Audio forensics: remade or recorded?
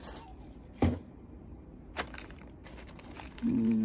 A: remade